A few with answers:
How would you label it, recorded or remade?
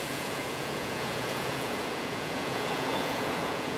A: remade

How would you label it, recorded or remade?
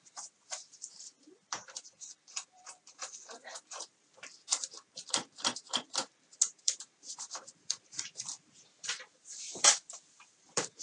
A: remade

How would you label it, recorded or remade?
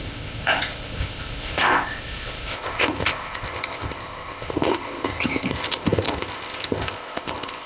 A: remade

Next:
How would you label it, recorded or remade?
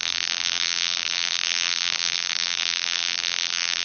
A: remade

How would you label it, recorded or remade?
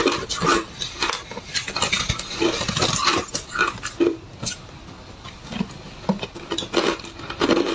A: recorded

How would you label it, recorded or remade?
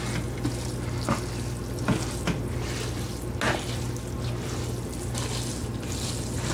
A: recorded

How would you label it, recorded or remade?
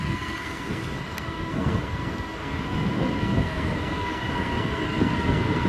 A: remade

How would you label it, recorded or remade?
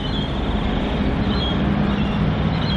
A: recorded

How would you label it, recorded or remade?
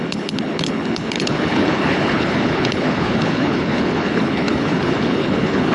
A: remade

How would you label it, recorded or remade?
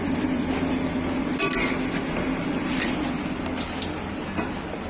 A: recorded